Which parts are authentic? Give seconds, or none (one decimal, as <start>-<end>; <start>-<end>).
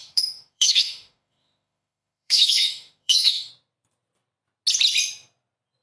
3.5-5.8